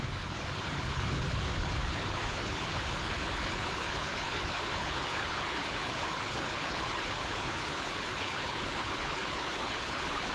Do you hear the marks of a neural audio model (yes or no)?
yes